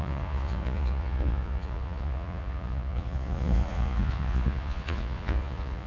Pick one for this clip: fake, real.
fake